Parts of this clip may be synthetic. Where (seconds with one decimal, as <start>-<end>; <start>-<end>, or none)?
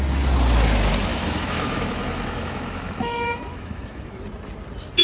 1.1-4.1